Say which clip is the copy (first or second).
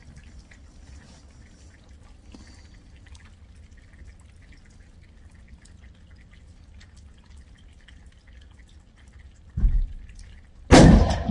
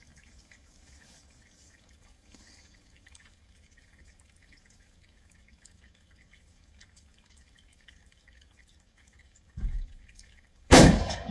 second